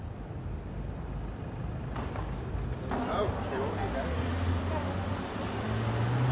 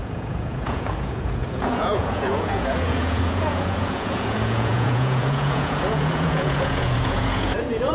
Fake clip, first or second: second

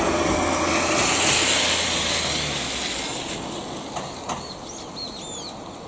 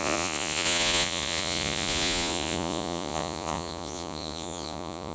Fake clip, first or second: second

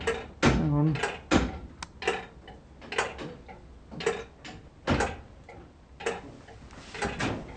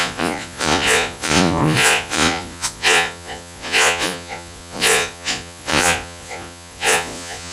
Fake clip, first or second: second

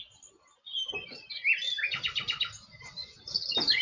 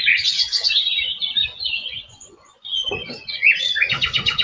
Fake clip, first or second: second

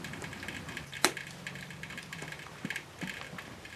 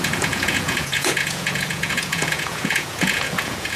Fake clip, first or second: second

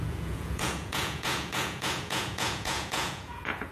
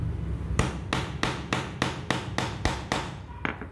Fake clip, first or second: first